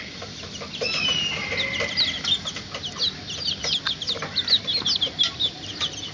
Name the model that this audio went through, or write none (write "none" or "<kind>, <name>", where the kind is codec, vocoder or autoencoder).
none